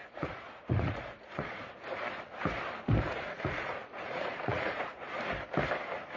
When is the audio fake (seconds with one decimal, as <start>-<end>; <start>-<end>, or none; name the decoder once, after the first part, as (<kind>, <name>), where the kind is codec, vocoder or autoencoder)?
0.0-1.9 (vocoder, Vocos); 3.1-5.2